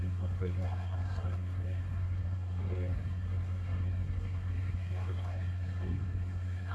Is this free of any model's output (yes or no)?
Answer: no